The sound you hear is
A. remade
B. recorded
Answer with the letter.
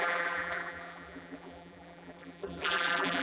A